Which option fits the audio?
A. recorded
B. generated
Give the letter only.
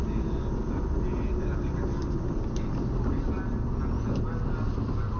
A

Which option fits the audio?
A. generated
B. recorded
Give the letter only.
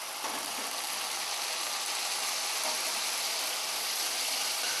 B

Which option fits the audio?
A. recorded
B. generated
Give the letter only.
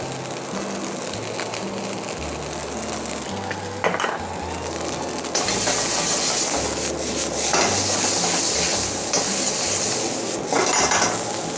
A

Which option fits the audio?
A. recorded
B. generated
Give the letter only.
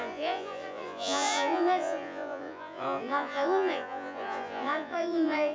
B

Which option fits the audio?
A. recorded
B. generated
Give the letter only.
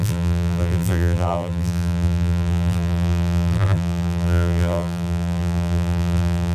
B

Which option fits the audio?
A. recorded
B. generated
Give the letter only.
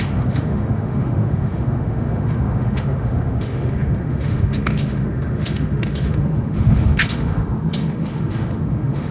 B